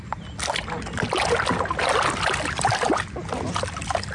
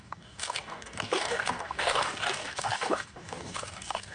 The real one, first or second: first